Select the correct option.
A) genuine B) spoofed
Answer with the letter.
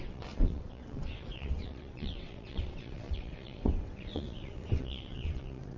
B